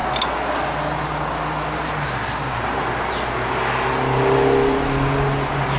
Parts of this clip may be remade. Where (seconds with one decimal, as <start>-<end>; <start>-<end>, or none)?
none